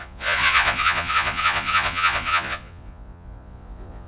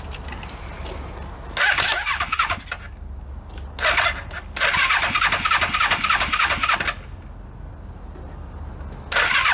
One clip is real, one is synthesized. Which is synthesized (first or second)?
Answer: first